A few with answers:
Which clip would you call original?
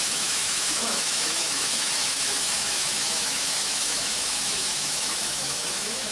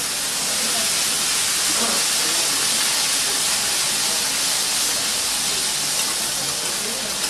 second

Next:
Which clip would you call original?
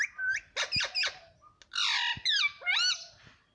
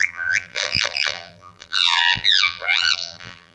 first